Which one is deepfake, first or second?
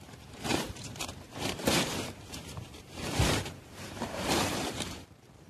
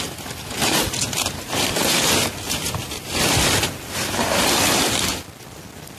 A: first